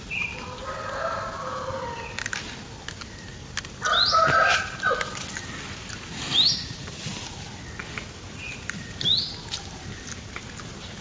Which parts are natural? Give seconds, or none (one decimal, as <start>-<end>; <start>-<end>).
0.0-11.0